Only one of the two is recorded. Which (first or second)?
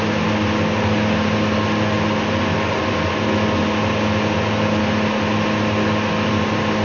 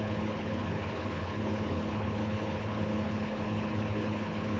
first